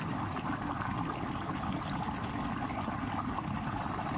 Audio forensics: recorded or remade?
recorded